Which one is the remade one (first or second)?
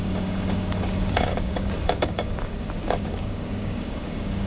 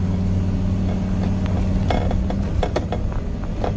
first